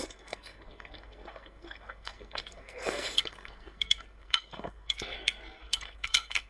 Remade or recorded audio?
remade